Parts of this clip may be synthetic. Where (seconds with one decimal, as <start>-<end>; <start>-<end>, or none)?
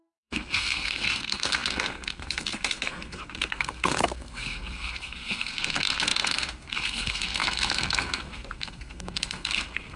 0.0-10.0